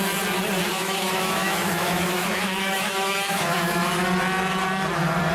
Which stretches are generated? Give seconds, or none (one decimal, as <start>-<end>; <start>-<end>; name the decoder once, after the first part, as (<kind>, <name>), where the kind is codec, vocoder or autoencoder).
0.7-3.9 (autoencoder, DAC-VAE)